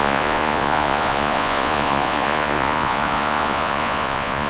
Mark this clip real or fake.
fake